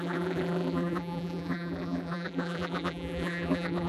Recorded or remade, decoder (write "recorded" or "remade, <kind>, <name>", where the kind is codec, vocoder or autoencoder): remade, vocoder, BigVGAN v2